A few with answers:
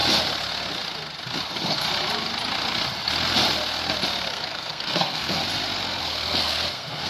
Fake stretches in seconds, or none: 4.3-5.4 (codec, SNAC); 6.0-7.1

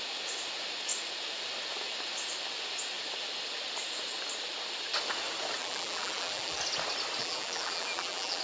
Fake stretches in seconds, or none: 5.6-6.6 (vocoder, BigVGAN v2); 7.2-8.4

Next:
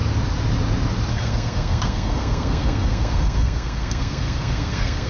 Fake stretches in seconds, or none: 1.1-5.1 (codec, SNAC)